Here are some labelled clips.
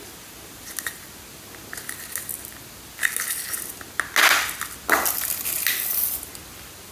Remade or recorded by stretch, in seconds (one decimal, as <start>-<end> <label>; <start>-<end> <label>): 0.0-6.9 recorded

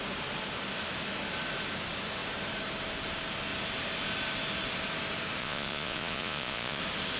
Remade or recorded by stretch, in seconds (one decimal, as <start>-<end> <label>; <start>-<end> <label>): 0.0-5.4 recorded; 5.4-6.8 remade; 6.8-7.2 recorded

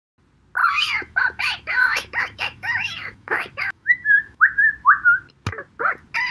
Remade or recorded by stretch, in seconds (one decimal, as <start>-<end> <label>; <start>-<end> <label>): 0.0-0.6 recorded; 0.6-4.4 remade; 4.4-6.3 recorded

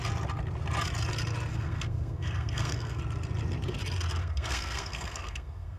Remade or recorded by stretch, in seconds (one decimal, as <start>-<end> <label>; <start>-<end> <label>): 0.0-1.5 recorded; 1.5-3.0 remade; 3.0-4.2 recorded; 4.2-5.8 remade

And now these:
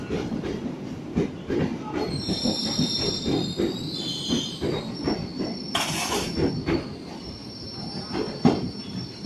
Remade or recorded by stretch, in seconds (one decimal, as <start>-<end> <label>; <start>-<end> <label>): 0.0-1.7 recorded; 1.7-3.1 remade; 3.1-7.4 recorded; 7.4-8.8 remade; 8.8-9.3 recorded